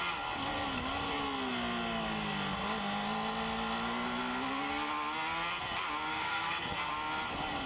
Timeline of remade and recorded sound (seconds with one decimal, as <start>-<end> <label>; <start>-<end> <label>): 0.0-6.1 recorded; 6.1-6.9 remade; 6.9-7.7 recorded